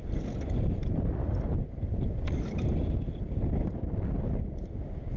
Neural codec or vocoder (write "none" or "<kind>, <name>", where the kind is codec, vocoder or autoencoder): none